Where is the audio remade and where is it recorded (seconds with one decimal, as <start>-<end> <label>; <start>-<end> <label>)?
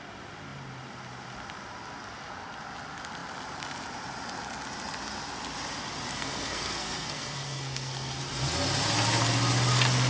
0.0-6.1 recorded; 6.1-8.2 remade; 8.2-10.1 recorded